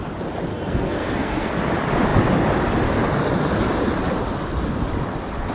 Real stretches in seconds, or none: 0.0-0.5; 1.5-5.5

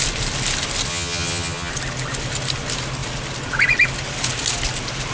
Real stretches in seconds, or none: 0.0-0.9; 1.7-5.1

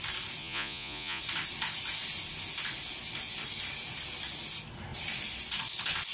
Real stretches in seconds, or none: 0.0-0.4; 1.2-6.1

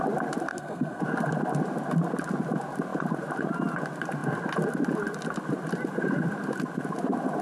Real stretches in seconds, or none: 0.0-0.5; 1.0-7.4

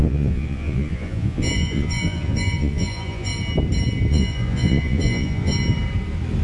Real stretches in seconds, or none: 3.3-4.1; 5.5-6.4

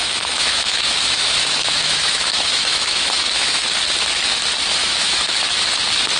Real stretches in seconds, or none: 3.7-4.8; 5.4-6.2